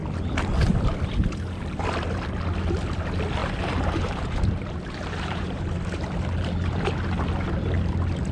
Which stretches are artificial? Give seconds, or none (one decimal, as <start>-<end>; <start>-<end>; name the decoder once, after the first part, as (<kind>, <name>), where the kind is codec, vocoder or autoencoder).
3.4-5.6 (vocoder, BigVGAN v2)